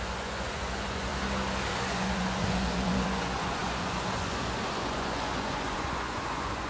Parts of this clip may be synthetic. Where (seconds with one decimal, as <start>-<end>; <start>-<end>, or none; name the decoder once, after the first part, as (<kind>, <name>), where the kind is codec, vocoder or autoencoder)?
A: 0.0-1.1 (vocoder, Vocos); 1.7-6.7